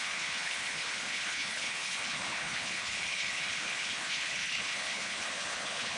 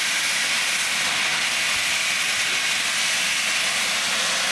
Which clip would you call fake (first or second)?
first